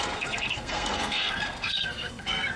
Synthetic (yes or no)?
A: yes